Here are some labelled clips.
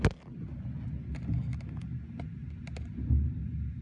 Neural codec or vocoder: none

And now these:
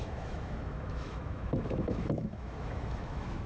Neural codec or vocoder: autoencoder, DAC-VAE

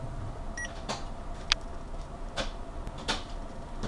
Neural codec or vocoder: none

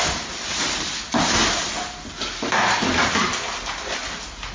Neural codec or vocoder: none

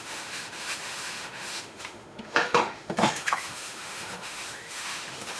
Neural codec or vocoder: autoencoder, DAC-VAE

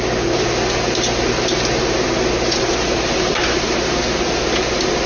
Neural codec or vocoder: none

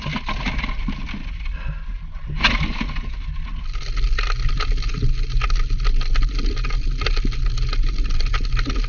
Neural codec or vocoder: none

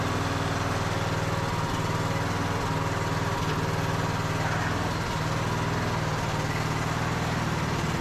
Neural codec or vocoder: none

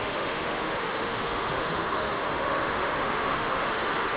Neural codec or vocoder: autoencoder, DAC-VAE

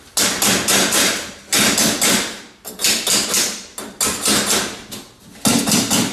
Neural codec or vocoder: none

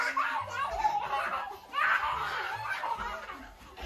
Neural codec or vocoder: none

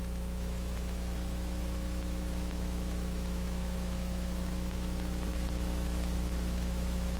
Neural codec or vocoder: autoencoder, DAC-VAE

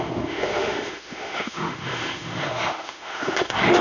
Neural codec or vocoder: autoencoder, DAC-VAE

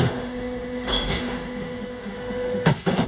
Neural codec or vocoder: autoencoder, DAC-VAE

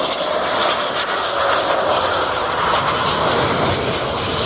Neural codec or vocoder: none